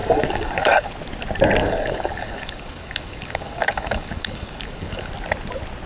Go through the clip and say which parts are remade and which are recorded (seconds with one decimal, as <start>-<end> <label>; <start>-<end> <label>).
0.0-0.9 remade; 0.9-1.6 recorded; 1.6-5.1 remade; 5.1-5.9 recorded